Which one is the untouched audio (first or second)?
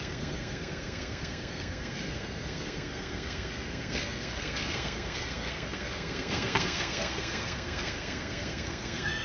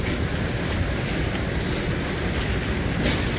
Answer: second